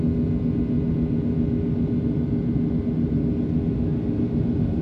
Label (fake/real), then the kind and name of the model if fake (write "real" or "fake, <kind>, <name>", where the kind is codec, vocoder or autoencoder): real